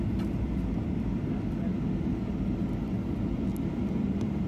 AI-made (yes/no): no